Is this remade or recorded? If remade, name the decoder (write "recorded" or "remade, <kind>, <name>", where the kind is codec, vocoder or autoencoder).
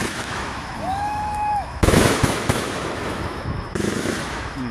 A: remade, autoencoder, DAC-VAE